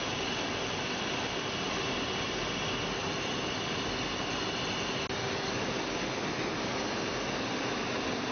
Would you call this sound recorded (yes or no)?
yes